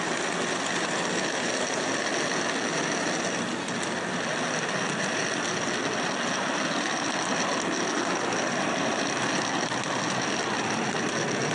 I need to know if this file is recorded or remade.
recorded